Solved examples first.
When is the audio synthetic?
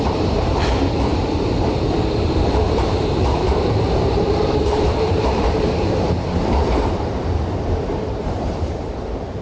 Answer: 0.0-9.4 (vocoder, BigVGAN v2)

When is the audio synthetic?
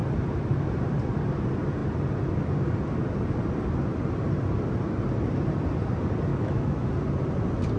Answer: 6.3-6.9 (autoencoder, DAC-VAE)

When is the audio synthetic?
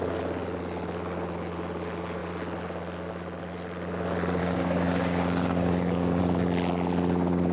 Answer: 4.4-6.2 (codec, DAC)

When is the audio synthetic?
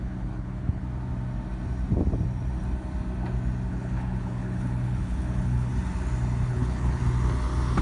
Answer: 0.0-0.8 (codec, HILCodec); 3.7-5.7; 6.5-7.0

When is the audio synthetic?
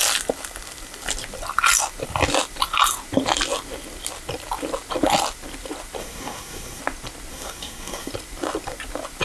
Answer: 6.0-6.8 (codec, SNAC); 7.3-8.1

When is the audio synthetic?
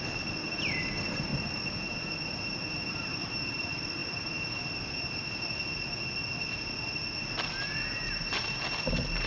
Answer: 0.0-1.3 (vocoder, BigVGAN v2); 2.7-6.2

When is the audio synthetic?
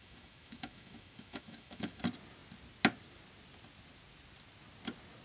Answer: 0.0-2.0 (autoencoder, DAC-VAE)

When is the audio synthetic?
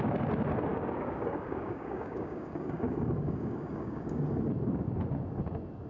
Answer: 0.7-4.2 (codec, DAC)